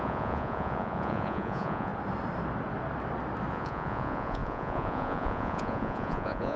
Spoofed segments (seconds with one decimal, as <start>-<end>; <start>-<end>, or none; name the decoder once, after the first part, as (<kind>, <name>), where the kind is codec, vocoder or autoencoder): 0.0-1.9 (vocoder, Vocos); 3.5-6.6